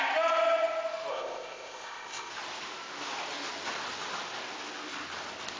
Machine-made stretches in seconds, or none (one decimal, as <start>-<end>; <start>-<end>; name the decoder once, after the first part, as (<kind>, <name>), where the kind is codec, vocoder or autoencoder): 1.1-2.3 (codec, ZipCodec)